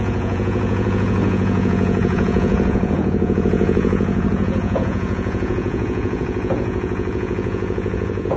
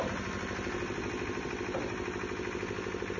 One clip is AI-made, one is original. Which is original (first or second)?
second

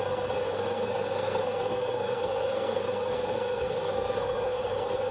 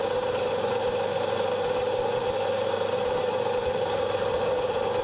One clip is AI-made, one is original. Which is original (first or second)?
second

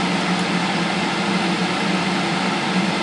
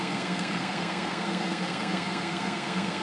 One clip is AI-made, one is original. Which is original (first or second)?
first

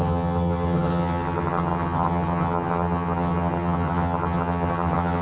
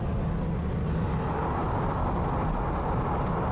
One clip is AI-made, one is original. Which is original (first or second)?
second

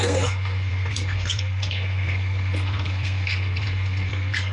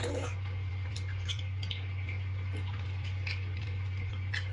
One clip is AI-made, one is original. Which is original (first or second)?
second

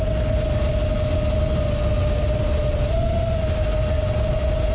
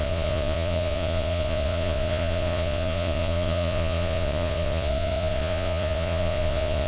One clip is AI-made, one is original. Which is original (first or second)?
first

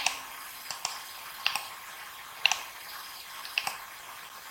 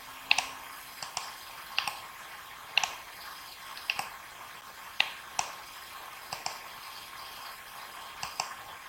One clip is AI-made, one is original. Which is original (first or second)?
second